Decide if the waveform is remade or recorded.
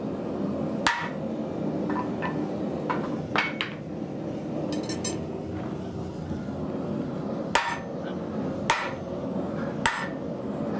recorded